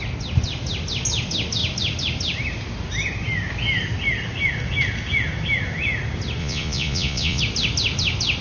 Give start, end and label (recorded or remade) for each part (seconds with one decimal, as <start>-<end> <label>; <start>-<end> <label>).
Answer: 0.0-6.4 recorded; 6.4-7.4 remade; 7.4-8.4 recorded